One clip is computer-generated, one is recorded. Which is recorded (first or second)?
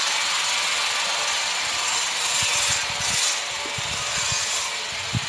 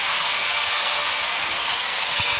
first